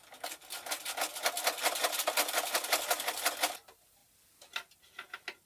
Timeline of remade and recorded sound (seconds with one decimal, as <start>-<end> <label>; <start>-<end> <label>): 0.0-5.5 recorded